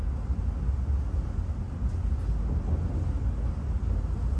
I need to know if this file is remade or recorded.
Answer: recorded